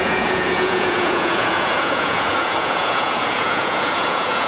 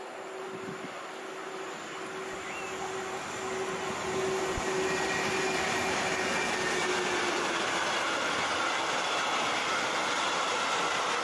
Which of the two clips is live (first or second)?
second